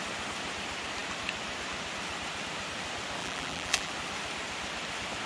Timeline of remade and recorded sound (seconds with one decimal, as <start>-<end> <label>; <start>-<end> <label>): 0.0-3.2 recorded; 3.2-3.9 remade; 3.9-5.3 recorded